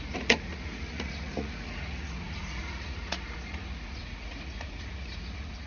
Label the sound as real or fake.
fake